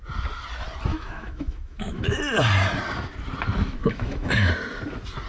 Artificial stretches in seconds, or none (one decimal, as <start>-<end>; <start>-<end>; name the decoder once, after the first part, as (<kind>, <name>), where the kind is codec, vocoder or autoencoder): 0.9-2.2 (autoencoder, DAC-VAE); 3.8-4.5